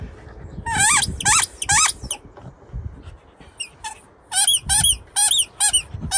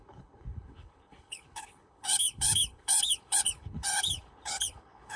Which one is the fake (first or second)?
second